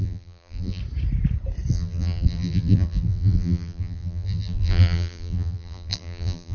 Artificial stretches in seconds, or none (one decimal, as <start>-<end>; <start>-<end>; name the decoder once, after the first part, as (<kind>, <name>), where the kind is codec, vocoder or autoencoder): 0.0-0.8 (vocoder, BigVGAN v2); 1.7-6.5